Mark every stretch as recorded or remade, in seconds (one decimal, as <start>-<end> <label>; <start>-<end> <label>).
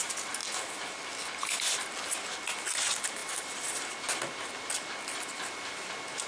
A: 0.0-3.2 recorded; 3.2-3.9 remade; 3.9-6.3 recorded